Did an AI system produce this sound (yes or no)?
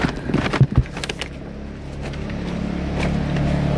no